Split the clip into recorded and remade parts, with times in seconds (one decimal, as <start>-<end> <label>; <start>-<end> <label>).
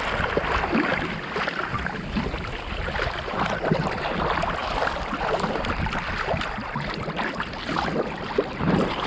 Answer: 0.0-0.9 recorded; 0.9-1.6 remade; 1.6-4.6 recorded; 4.6-7.0 remade; 7.0-9.1 recorded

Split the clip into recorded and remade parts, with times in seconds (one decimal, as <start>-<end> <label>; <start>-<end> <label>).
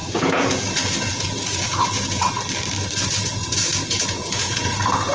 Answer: 0.0-2.3 remade; 2.3-3.4 recorded; 3.4-5.1 remade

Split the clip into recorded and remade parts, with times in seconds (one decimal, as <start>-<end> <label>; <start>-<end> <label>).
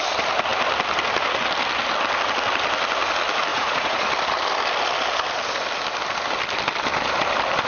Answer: 0.0-3.5 recorded; 3.5-4.1 remade; 4.1-7.7 recorded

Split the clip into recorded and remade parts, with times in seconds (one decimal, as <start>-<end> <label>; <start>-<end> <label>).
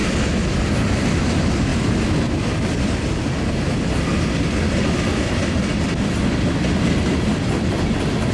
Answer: 0.0-8.3 recorded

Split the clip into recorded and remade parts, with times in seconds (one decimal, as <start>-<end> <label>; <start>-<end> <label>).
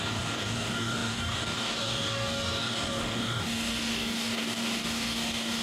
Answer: 0.0-5.6 remade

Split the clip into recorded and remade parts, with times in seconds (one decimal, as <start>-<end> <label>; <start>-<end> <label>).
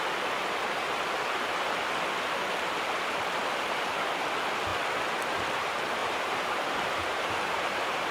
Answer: 0.0-6.0 recorded; 6.0-8.1 remade